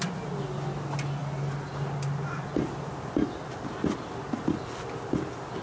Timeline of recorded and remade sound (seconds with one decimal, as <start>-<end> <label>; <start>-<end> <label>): 0.0-5.6 recorded

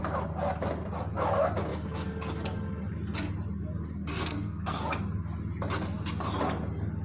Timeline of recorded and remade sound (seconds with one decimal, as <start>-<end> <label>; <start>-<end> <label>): 0.0-4.1 recorded; 4.1-4.8 remade; 4.8-7.0 recorded

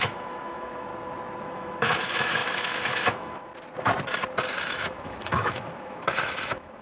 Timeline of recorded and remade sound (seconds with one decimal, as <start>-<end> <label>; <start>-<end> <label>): 0.0-0.9 remade; 0.9-1.4 recorded; 1.4-3.5 remade; 3.5-4.6 recorded; 4.6-6.8 remade

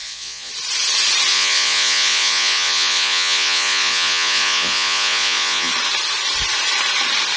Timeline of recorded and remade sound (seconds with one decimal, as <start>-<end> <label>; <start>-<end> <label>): 0.0-0.5 remade; 0.5-1.3 recorded; 1.3-5.7 remade; 5.7-7.4 recorded

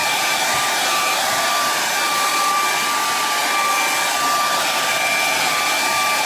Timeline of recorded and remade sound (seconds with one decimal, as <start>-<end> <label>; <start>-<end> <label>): 0.0-2.3 remade; 2.3-5.8 recorded; 5.8-6.3 remade

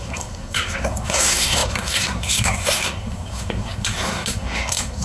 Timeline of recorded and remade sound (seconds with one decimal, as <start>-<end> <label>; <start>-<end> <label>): 0.0-5.0 remade

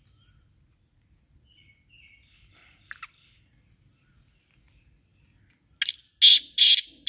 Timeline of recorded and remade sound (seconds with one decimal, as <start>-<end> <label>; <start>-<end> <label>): 0.0-7.1 recorded